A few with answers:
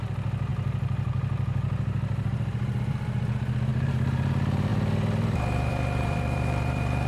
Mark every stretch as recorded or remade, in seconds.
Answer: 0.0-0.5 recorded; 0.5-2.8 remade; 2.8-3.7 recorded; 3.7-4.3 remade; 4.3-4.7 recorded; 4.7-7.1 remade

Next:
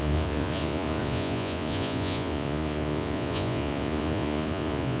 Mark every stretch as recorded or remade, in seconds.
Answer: 0.0-5.0 remade

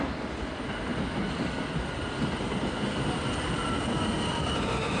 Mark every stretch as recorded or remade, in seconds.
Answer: 0.0-5.0 recorded

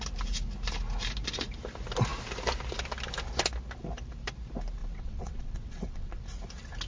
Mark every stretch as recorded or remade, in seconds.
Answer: 0.0-4.8 recorded; 4.8-6.2 remade; 6.2-6.9 recorded

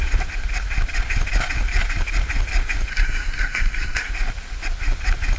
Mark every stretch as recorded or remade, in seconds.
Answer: 0.0-2.9 recorded; 2.9-4.1 remade; 4.1-5.4 recorded

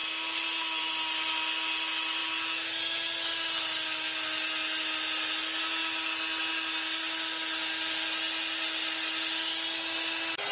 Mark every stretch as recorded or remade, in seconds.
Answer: 0.0-10.5 recorded

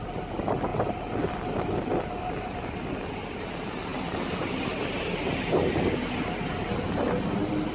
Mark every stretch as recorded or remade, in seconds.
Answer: 0.0-7.7 recorded